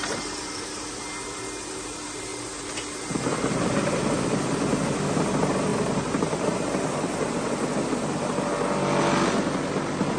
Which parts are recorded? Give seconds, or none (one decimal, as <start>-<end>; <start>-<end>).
0.0-2.3; 3.9-5.7; 7.3-10.2